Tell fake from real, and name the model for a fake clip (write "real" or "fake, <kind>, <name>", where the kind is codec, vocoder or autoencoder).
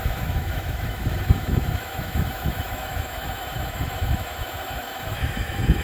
fake, autoencoder, DAC-VAE